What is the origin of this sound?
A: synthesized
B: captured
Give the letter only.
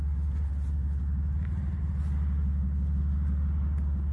B